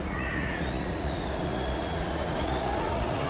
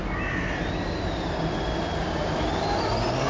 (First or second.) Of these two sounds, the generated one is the first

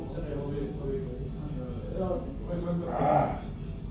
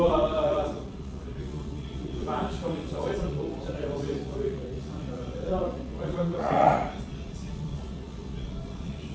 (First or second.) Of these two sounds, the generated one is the second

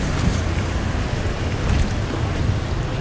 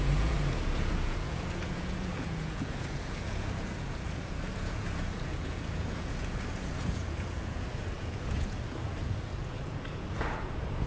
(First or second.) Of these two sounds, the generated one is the second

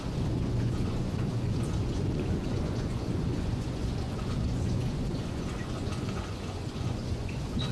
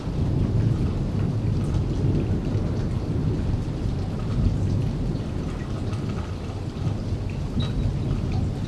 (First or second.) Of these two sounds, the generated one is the first